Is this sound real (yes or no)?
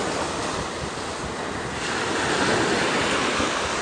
yes